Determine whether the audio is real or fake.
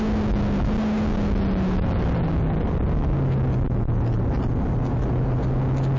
real